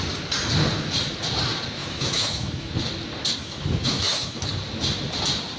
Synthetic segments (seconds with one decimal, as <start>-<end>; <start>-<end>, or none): 1.8-2.7; 3.4-4.5